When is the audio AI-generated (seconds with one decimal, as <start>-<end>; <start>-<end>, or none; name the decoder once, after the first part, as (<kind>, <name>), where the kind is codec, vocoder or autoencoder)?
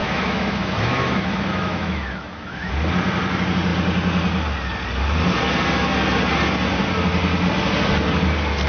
0.0-2.7 (autoencoder, DAC-VAE)